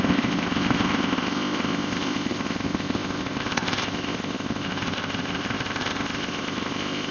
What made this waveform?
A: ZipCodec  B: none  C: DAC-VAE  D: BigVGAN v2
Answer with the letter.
A